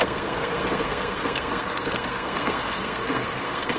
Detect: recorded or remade remade